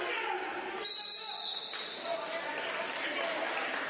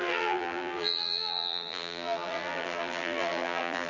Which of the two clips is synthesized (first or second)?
second